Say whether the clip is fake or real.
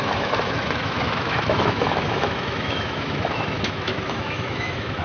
fake